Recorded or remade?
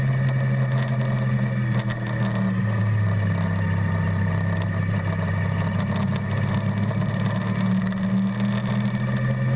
recorded